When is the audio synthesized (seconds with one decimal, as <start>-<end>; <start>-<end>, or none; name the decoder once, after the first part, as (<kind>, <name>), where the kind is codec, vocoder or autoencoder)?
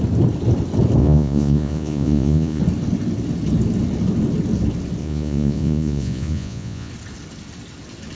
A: 1.0-2.6 (vocoder, Vocos); 5.0-6.9